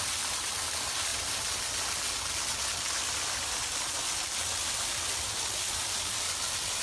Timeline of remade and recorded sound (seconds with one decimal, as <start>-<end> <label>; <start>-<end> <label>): 0.0-6.8 recorded